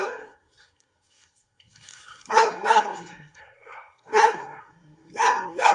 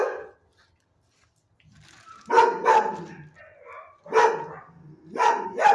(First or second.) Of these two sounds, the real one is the second